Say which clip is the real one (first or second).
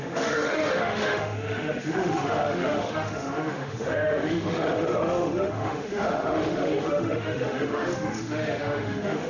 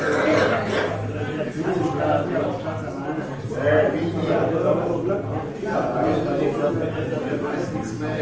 second